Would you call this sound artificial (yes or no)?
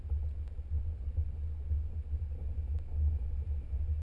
no